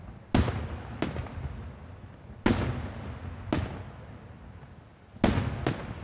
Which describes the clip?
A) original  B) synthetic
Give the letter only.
A